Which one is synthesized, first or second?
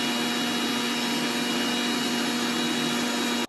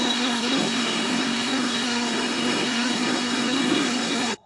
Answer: second